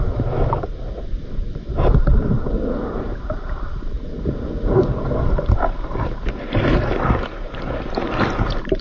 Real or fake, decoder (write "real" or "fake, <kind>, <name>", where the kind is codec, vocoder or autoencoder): fake, vocoder, BigVGAN v2